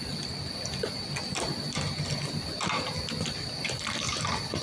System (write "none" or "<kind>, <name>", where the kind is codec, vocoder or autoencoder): vocoder, BigVGAN v2